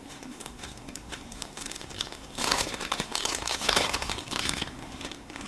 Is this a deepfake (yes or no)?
yes